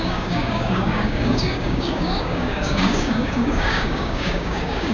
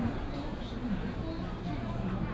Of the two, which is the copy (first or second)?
first